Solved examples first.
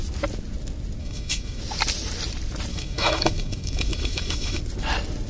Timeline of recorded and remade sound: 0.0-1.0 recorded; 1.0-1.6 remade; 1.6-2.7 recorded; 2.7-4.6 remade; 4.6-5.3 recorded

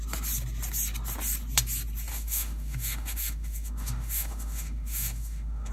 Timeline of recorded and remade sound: 0.0-2.1 recorded; 2.1-5.7 remade

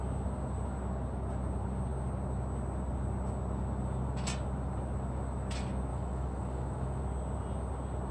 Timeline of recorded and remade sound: 0.0-5.9 recorded; 5.9-7.0 remade; 7.0-8.1 recorded

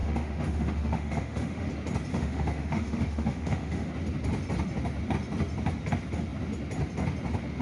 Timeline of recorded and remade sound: 0.0-1.7 remade; 1.7-2.1 recorded; 2.1-3.9 remade; 3.9-7.6 recorded

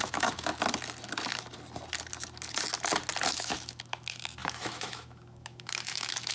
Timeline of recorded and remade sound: 0.0-0.5 remade; 0.5-3.3 recorded; 3.3-6.3 remade

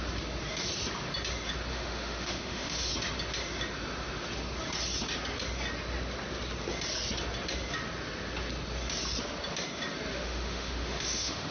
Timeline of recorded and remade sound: 0.0-1.7 recorded; 1.7-2.9 remade; 2.9-10.1 recorded; 10.1-11.5 remade